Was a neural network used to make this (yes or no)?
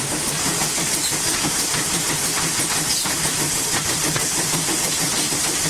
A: yes